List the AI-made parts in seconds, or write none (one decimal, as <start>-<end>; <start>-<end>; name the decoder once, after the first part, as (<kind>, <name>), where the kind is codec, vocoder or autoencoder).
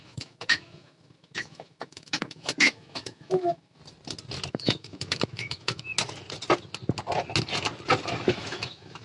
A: 0.0-3.8 (autoencoder, DAC-VAE); 4.5-5.9; 8.3-9.0